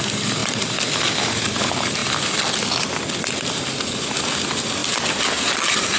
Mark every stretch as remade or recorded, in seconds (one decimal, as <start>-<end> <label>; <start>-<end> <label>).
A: 0.0-6.0 recorded